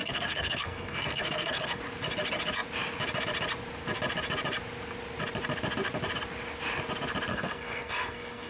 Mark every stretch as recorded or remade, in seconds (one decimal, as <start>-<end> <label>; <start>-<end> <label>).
0.0-1.8 remade; 1.8-7.3 recorded; 7.3-8.5 remade